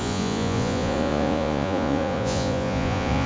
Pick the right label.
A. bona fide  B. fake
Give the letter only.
B